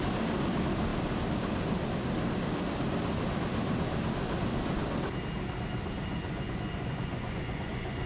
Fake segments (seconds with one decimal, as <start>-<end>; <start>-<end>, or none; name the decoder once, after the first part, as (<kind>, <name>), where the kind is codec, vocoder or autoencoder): 6.1-8.1 (vocoder, Vocos)